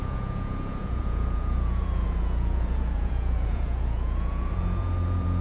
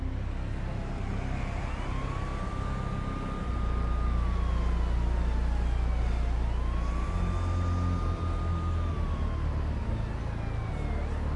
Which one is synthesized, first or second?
first